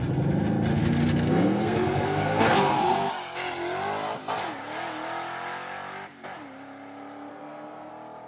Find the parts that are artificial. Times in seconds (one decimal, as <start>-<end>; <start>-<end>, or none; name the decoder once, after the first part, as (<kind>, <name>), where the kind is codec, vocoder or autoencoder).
0.8-3.1 (codec, SNAC); 7.3-7.9